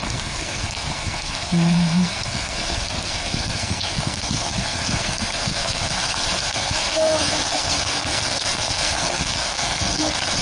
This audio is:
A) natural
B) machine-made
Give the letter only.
B